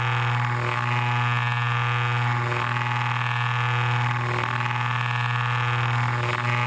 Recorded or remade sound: recorded